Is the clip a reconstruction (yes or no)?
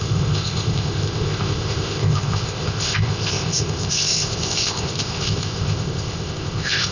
yes